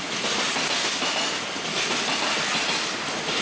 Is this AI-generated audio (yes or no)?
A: no